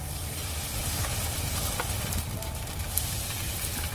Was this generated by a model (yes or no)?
no